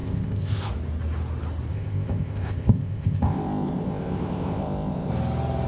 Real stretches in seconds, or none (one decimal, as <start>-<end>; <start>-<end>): 0.7-1.7; 5.1-5.7